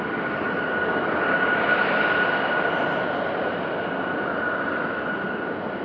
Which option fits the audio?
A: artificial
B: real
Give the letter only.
B